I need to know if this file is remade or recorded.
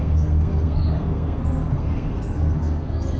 remade